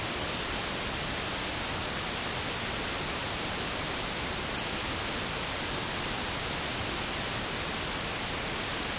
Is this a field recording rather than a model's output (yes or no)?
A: yes